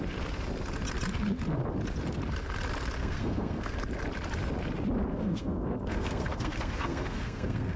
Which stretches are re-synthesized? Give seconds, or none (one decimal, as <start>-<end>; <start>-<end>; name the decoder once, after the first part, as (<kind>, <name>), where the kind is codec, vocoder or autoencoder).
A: 3.0-3.7 (codec, SNAC); 5.1-7.8